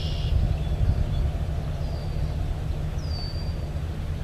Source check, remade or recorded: recorded